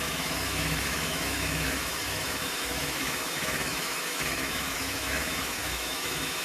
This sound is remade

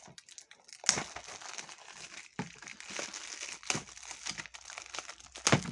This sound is recorded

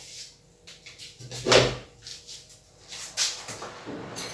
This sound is recorded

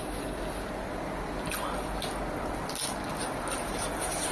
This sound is recorded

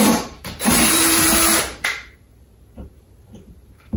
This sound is remade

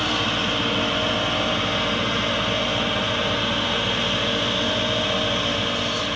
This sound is recorded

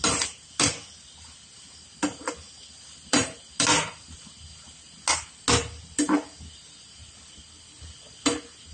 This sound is recorded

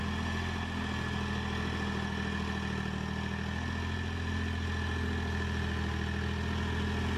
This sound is recorded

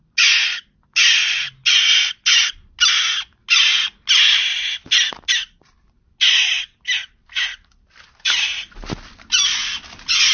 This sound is recorded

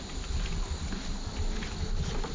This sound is recorded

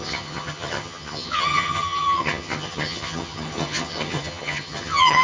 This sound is remade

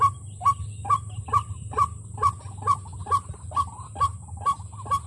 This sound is recorded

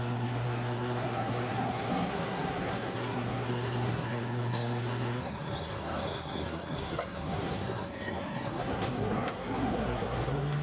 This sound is remade